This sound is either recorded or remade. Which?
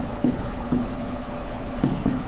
remade